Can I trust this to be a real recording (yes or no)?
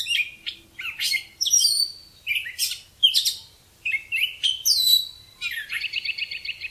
no